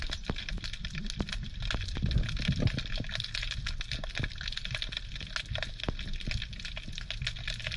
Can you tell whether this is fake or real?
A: real